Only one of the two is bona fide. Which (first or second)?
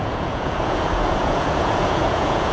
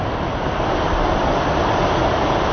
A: second